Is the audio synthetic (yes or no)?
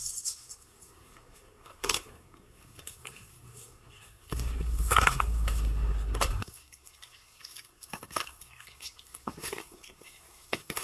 yes